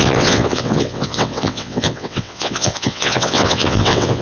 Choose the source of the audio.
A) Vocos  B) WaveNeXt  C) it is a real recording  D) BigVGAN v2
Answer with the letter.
B